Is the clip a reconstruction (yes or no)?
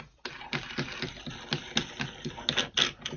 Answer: no